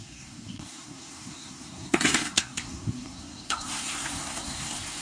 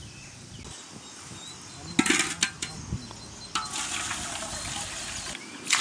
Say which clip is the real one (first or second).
second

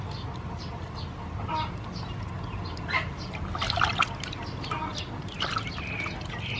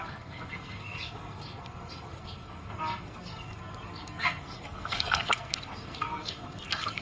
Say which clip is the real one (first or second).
first